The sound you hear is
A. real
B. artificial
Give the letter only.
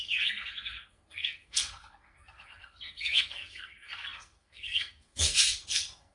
B